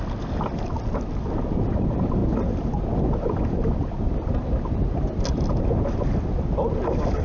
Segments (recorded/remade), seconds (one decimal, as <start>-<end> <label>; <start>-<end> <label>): 0.0-7.2 recorded